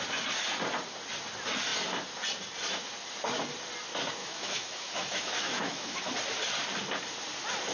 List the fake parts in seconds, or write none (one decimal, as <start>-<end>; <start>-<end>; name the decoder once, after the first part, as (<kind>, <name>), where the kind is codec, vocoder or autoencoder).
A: 4.2-6.1 (autoencoder, DAC-VAE)